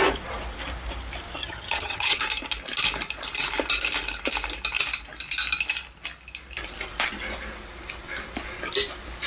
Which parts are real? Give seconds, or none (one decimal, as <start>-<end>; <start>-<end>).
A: 0.0-1.4; 2.2-9.3